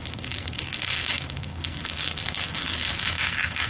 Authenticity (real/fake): fake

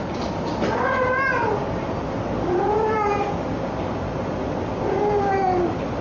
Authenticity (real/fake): fake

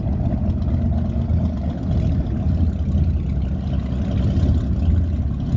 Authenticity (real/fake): real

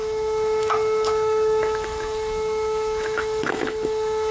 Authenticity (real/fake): fake